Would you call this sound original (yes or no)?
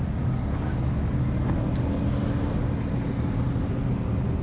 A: yes